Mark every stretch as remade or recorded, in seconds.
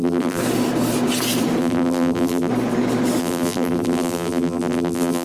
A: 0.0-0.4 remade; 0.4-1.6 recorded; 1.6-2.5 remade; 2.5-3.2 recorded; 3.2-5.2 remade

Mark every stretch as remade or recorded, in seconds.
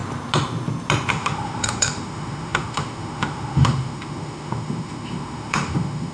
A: 0.0-1.1 recorded; 1.1-6.1 remade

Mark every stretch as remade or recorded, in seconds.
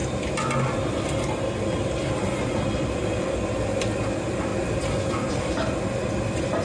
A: 0.0-4.5 remade; 4.5-5.3 recorded; 5.3-6.6 remade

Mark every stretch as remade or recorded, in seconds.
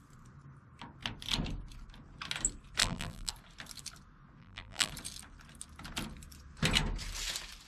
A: 0.0-2.8 recorded; 2.8-3.3 remade; 3.3-4.4 recorded; 4.4-4.9 remade; 4.9-7.7 recorded